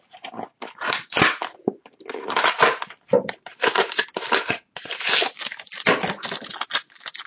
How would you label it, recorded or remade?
recorded